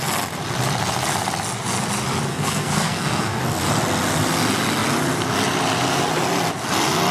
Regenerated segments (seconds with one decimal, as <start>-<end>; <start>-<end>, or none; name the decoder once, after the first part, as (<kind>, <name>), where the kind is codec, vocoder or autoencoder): 2.3-3.4 (codec, SNAC)